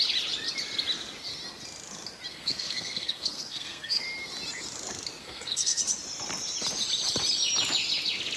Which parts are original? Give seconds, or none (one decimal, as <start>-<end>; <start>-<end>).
0.0-2.3; 4.0-5.2; 5.8-8.4